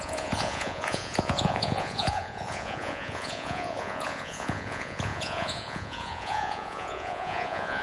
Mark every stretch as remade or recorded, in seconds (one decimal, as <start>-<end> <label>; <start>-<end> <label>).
0.0-7.8 remade